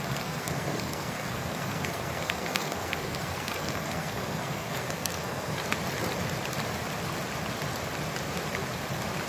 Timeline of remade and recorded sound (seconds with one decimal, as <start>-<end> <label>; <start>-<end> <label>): 0.0-5.6 remade; 5.6-9.3 recorded